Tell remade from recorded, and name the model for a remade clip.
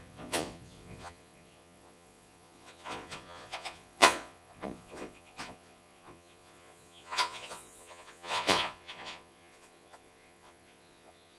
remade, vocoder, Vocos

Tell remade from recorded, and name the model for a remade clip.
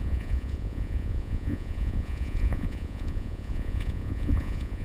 remade, vocoder, Vocos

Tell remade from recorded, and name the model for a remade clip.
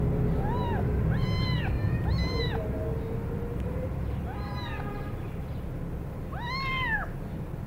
recorded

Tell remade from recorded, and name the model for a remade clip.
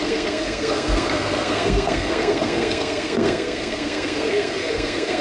remade, codec, SNAC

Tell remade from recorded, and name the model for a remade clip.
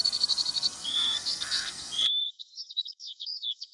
remade, codec, SNAC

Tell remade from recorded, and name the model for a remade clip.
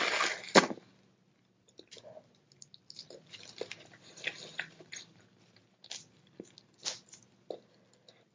recorded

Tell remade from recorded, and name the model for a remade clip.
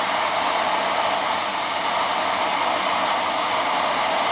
recorded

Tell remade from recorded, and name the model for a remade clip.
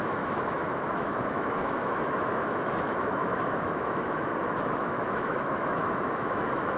remade, autoencoder, DAC-VAE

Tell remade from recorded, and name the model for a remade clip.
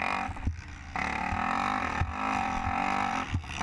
recorded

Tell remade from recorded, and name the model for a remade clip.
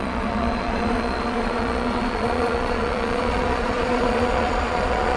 remade, vocoder, Vocos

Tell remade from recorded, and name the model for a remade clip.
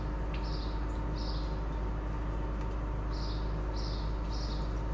recorded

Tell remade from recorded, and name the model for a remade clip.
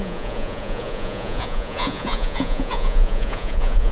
remade, vocoder, Vocos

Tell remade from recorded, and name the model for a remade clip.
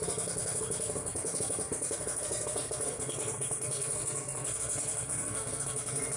remade, codec, SNAC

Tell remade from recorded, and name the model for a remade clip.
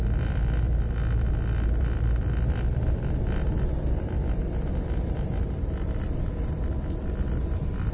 remade, vocoder, BigVGAN v2